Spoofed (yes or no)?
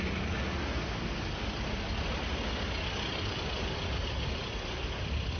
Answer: no